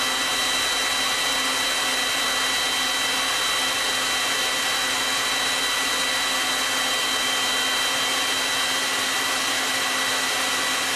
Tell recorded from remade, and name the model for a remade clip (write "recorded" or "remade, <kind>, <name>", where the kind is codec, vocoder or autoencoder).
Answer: recorded